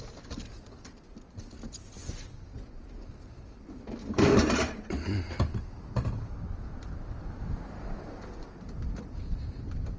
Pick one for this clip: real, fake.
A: real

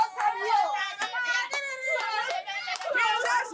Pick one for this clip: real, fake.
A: fake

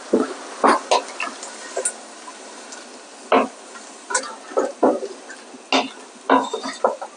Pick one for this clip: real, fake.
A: real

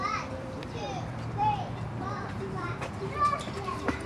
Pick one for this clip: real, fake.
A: fake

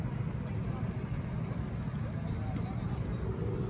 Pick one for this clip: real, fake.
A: real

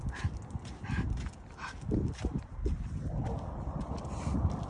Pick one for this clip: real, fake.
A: real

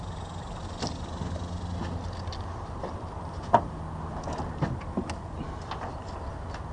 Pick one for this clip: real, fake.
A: real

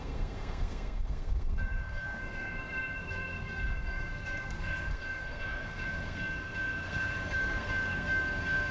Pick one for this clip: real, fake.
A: fake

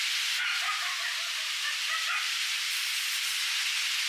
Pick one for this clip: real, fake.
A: real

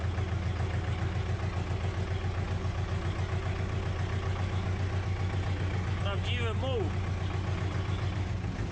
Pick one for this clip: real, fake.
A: real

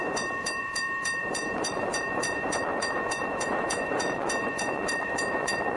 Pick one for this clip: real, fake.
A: fake